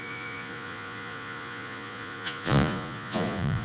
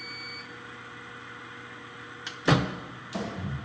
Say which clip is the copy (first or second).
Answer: first